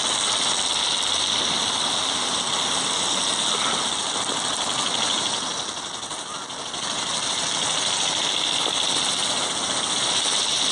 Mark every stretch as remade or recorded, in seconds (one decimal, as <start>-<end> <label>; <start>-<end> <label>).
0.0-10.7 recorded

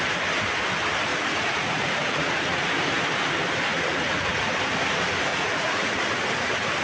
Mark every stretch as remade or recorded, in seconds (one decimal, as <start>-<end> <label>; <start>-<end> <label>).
0.0-1.1 recorded; 1.1-2.7 remade; 2.7-3.7 recorded; 3.7-4.5 remade; 4.5-5.3 recorded; 5.3-6.0 remade; 6.0-6.8 recorded

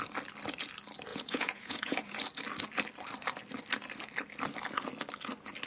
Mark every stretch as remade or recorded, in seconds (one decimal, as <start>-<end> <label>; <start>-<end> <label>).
0.0-1.1 recorded; 1.1-2.2 remade; 2.2-5.7 recorded

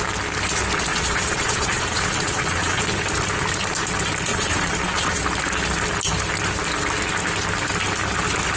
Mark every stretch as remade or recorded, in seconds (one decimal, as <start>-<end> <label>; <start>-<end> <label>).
0.0-0.9 recorded; 0.9-2.8 remade; 2.8-4.3 recorded; 4.3-5.2 remade; 5.2-8.6 recorded

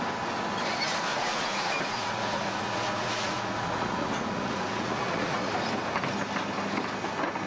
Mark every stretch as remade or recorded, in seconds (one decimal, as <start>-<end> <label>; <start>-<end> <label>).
0.0-1.1 recorded; 1.1-5.5 remade; 5.5-7.5 recorded